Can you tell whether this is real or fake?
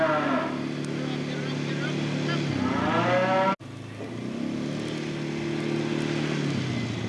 real